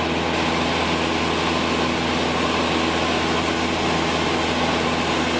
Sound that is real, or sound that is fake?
real